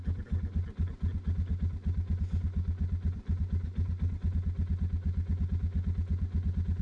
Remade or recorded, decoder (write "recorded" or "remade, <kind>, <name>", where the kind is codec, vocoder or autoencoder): recorded